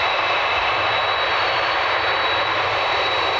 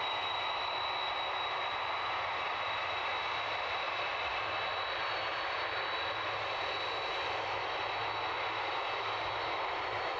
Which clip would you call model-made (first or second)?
first